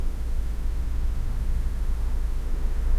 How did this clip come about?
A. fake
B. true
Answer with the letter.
A